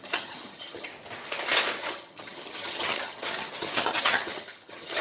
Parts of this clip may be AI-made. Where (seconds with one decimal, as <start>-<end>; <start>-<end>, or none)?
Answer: 0.0-0.9; 1.8-5.0